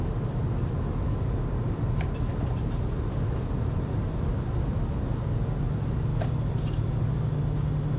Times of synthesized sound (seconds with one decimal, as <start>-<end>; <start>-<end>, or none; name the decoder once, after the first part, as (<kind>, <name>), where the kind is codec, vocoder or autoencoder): none